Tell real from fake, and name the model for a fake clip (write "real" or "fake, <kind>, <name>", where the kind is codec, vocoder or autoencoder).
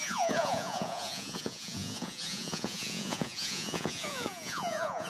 fake, vocoder, Vocos